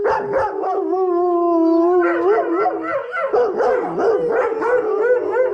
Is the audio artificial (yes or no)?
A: no